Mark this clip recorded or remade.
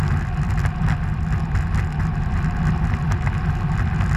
recorded